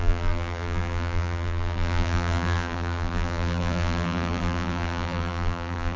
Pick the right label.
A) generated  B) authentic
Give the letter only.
A